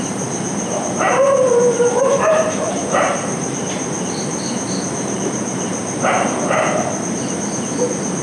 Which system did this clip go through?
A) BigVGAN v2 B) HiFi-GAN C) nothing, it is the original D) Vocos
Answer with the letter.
A